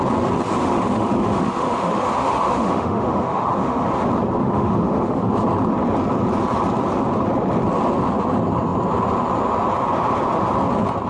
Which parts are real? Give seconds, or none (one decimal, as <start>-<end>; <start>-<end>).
0.0-0.6; 3.9-4.4; 5.3-11.1